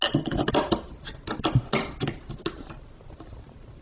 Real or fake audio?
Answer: real